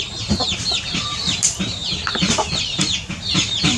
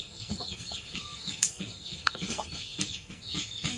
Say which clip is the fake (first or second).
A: second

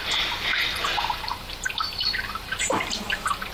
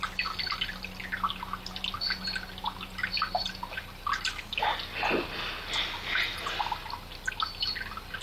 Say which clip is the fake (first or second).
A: first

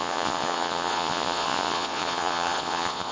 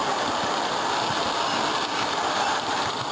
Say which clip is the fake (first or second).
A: first